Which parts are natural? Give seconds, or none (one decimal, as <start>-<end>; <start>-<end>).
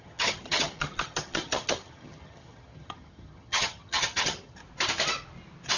4.6-5.8